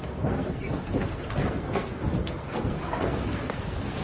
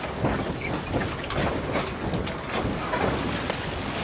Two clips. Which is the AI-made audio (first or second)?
first